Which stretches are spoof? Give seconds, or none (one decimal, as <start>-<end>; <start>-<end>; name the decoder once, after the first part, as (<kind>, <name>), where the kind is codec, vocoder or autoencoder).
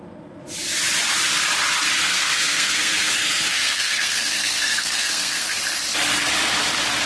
2.0-5.6 (codec, SNAC)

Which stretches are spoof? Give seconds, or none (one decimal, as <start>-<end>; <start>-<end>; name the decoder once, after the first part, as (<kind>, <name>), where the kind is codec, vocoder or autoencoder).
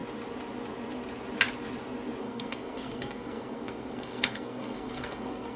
2.2-5.6 (codec, SNAC)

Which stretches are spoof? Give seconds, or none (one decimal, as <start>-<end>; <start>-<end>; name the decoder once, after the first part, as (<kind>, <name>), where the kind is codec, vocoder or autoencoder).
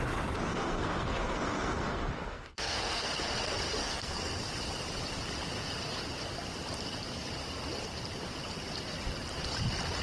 0.5-3.1 (codec, SNAC); 3.8-4.4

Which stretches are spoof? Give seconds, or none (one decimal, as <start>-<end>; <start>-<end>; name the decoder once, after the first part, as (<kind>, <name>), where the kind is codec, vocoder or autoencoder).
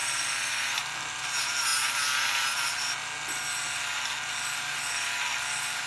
none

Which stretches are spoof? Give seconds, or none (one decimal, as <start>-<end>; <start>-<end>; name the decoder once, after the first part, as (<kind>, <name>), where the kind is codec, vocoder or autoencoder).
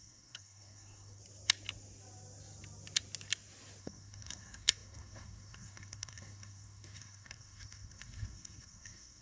0.0-1.2 (codec, SNAC); 3.8-9.2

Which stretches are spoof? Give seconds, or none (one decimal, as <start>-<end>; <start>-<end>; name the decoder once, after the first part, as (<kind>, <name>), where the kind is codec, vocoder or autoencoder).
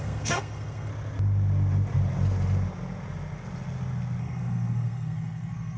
0.0-0.9 (codec, SNAC); 4.2-5.8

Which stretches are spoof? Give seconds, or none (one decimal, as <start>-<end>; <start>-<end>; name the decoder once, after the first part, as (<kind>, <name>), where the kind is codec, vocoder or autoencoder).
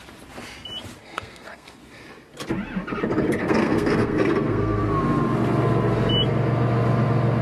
1.0-1.8 (codec, SNAC); 3.4-4.8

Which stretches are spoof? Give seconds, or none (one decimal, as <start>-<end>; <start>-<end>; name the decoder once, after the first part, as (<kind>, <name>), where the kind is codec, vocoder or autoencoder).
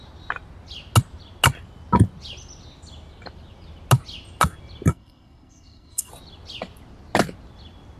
4.9-6.1 (codec, SNAC)